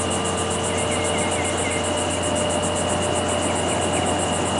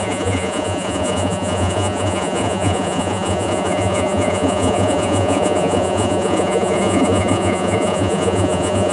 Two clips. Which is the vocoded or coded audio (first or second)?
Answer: second